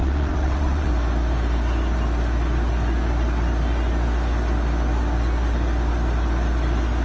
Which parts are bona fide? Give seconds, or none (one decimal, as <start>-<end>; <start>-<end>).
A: 0.9-7.0